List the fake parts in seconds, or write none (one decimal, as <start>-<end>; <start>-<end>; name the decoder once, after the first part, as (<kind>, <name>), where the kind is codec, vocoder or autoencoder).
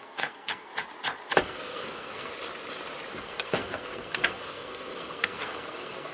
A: 0.0-0.7 (codec, SNAC); 1.4-2.3; 3.2-6.1